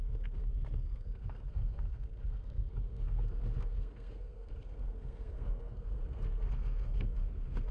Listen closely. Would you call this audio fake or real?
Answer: fake